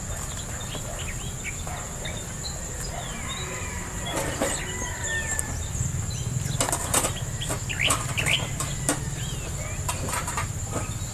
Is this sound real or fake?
real